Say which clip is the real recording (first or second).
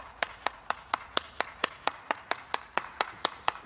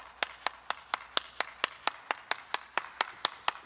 second